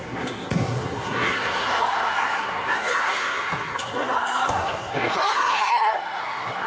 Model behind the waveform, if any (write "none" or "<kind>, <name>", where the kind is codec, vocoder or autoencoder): codec, SNAC